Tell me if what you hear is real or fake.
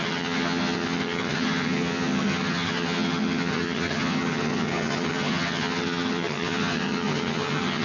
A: fake